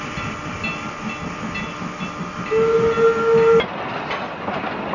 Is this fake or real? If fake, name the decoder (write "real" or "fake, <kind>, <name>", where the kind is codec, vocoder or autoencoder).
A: real